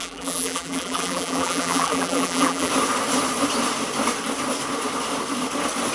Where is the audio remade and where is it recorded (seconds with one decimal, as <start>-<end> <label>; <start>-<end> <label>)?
0.0-2.7 remade; 2.7-5.9 recorded